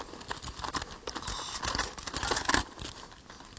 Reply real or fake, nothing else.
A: real